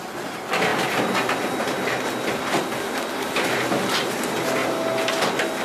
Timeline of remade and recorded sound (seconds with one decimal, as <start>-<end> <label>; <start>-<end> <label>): 0.0-5.6 recorded